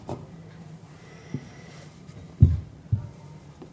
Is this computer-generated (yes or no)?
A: yes